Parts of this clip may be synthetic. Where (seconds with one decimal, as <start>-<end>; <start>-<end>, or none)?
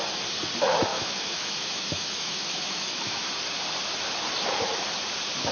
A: 0.9-3.3